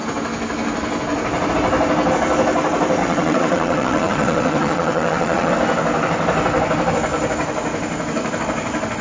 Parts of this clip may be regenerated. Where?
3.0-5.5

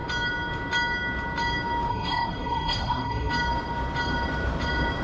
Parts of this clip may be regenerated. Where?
1.9-3.3

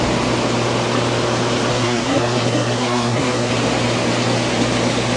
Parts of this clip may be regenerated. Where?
1.7-3.5

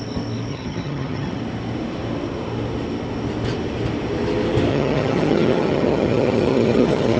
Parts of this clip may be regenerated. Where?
0.5-1.4; 4.7-7.2

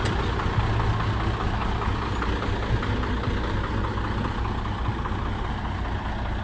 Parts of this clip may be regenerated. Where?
none

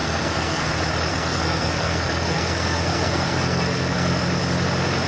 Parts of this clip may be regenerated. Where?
0.0-0.7; 1.1-4.2

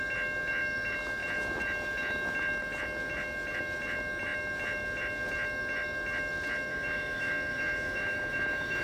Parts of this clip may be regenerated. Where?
6.7-8.8

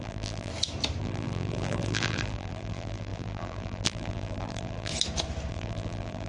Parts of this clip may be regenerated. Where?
0.0-0.5; 1.0-4.9; 5.5-6.3